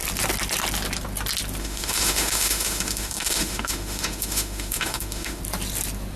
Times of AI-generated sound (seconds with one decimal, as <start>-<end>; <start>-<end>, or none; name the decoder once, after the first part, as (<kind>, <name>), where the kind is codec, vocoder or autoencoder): 1.6-5.4 (autoencoder, DAC-VAE)